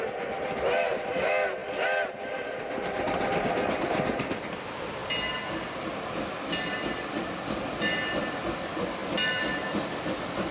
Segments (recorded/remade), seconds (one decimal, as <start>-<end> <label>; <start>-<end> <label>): 0.0-10.5 recorded